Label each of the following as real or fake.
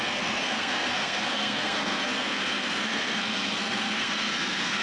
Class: fake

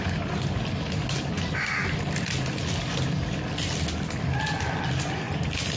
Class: real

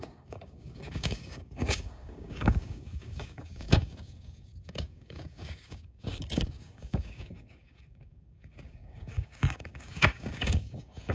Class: fake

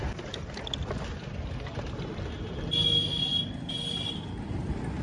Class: real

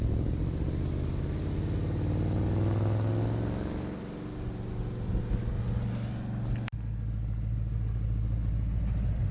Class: real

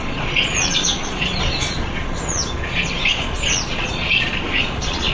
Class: fake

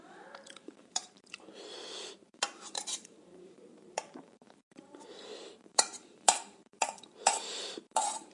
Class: fake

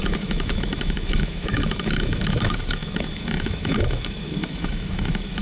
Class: fake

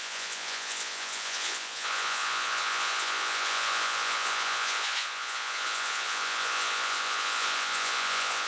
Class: fake